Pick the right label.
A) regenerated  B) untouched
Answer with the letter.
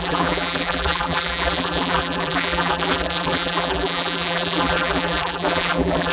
A